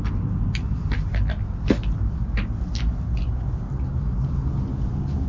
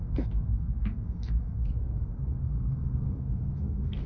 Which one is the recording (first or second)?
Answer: first